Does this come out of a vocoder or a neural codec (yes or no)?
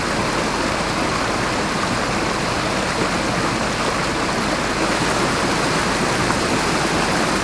no